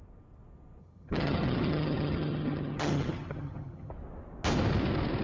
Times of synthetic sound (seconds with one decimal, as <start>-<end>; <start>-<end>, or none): 0.8-3.9

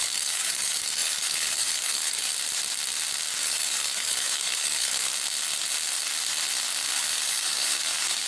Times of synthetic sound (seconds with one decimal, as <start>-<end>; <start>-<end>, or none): 0.0-2.3; 3.4-5.1; 6.8-8.3

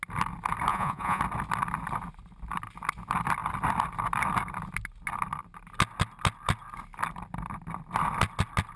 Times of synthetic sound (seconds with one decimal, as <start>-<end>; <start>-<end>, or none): 0.7-1.2

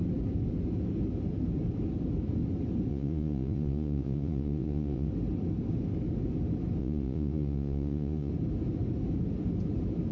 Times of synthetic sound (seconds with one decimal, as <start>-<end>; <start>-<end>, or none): 2.9-5.1; 6.8-8.3

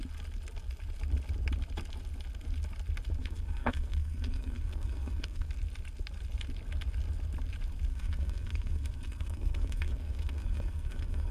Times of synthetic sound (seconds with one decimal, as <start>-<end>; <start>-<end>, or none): 3.2-5.5; 7.9-11.3

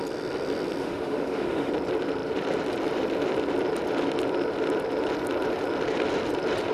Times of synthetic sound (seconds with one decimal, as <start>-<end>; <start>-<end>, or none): 0.8-1.7

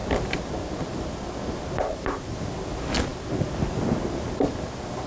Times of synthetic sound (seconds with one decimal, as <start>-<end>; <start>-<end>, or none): none